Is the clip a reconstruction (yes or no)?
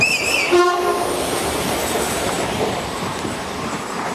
yes